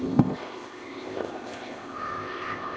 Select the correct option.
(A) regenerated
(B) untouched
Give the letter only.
A